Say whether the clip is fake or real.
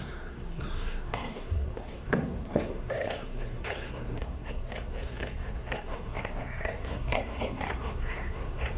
fake